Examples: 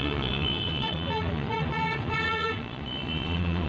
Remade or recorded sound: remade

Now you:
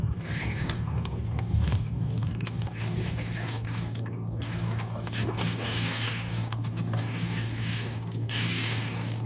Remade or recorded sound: remade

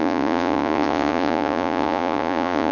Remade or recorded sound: remade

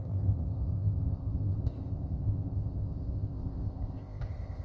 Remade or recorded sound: remade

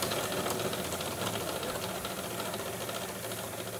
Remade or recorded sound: recorded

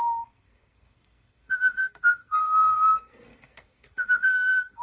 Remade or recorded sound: remade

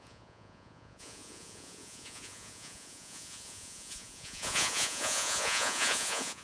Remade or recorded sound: remade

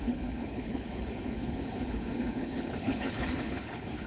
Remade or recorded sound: remade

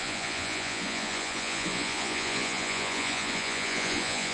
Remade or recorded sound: remade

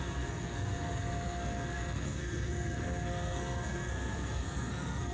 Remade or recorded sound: remade